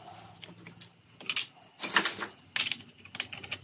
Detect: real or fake real